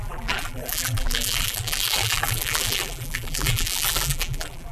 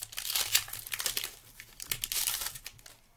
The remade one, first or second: first